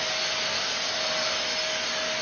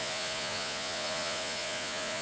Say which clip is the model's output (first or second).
second